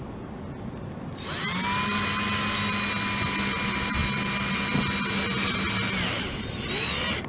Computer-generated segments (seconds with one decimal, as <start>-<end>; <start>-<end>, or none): none